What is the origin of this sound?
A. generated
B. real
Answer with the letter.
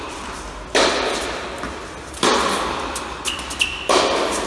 B